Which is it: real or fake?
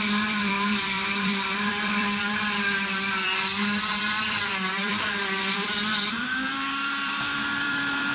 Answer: fake